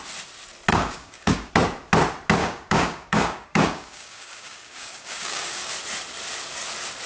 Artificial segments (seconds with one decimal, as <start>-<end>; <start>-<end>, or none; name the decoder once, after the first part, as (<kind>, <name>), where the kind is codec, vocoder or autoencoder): 0.7-1.5 (codec, DAC); 2.4-5.7